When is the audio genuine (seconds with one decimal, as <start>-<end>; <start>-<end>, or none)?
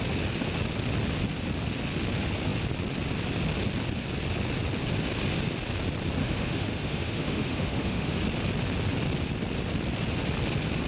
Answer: 0.0-6.2; 8.2-10.9